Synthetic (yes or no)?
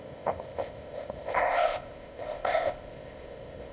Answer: yes